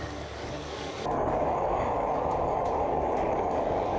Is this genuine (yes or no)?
no